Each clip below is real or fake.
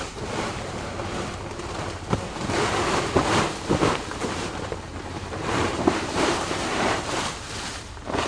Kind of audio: fake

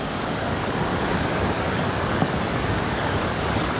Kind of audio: fake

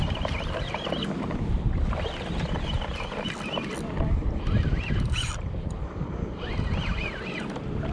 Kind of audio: fake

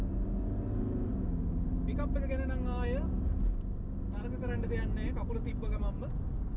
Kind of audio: real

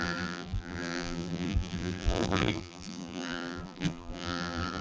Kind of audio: fake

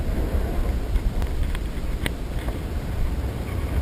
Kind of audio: real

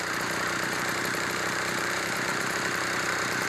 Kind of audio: fake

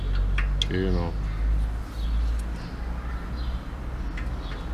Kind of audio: real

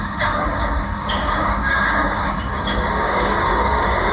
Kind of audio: fake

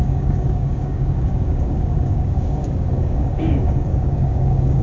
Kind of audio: fake